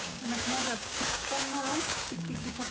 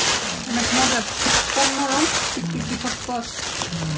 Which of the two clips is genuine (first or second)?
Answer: second